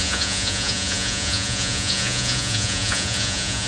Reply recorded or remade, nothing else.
remade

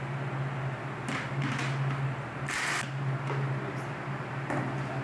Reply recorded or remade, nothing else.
recorded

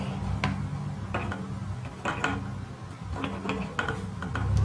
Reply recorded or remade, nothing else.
recorded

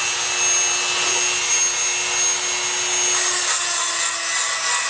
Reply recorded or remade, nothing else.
recorded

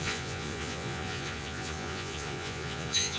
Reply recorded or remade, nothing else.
remade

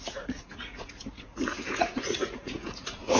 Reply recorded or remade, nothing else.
remade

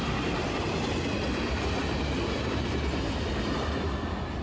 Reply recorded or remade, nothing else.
recorded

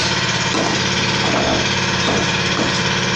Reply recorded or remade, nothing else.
recorded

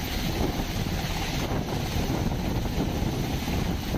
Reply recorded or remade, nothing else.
recorded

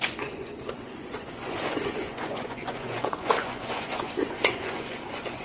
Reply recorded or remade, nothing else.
remade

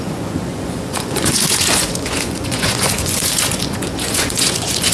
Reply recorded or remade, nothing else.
remade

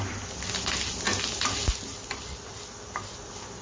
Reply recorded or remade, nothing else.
recorded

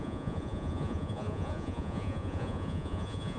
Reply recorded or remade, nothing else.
remade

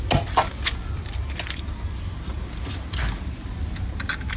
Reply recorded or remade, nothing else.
recorded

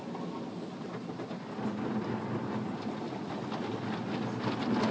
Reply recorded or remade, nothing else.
recorded